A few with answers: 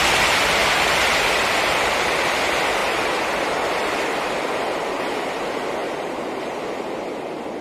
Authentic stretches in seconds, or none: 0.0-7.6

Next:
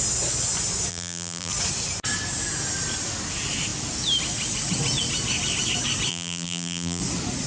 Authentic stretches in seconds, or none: 0.0-0.9; 1.5-6.1; 7.0-7.5

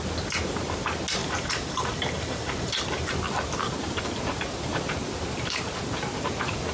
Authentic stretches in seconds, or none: 0.0-1.2; 3.1-6.7

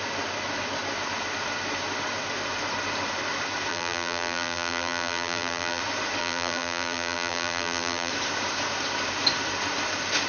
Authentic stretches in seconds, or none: 0.0-3.7; 5.8-6.2; 8.1-10.3

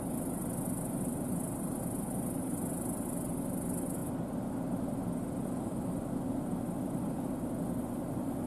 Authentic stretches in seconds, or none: 0.0-8.5